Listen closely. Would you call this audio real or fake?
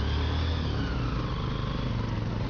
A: real